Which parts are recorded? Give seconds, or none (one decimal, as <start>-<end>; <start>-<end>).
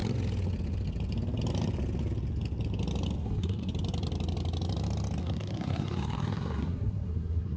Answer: 0.0-3.2; 3.7-5.2